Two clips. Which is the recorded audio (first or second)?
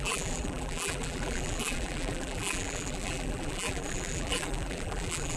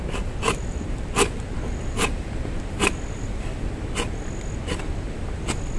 second